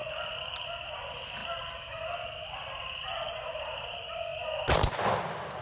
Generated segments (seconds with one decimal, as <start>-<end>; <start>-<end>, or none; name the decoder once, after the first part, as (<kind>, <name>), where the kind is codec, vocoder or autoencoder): none